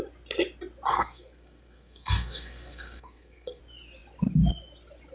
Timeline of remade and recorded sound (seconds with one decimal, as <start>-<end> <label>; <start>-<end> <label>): 0.0-0.9 recorded; 0.9-3.6 remade; 3.6-5.1 recorded